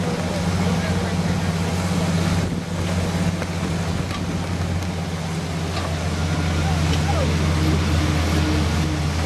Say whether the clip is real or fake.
real